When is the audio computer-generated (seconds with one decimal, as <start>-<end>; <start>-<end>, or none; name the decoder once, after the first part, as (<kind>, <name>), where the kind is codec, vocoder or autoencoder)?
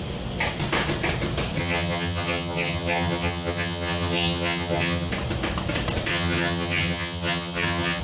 1.6-5.1 (vocoder, HiFi-GAN); 6.1-8.0